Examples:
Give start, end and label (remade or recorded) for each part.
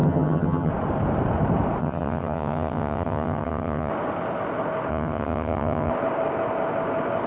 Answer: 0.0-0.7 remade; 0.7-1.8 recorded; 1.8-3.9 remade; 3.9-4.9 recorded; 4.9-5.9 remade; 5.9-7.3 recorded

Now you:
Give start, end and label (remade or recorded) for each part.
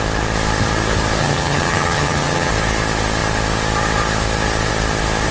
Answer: 0.0-1.2 recorded; 1.2-2.5 remade; 2.5-5.3 recorded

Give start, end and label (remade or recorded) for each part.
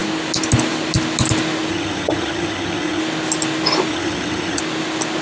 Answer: 0.0-1.7 recorded; 1.7-3.0 remade; 3.0-3.9 recorded; 3.9-4.6 remade; 4.6-5.2 recorded